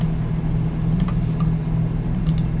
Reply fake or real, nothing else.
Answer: real